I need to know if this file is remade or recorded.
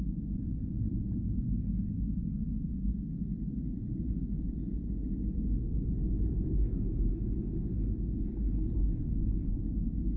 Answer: recorded